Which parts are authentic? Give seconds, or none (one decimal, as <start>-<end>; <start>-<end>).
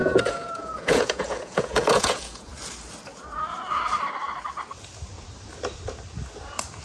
2.5-6.8